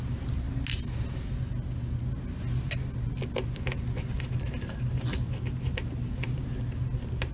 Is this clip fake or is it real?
real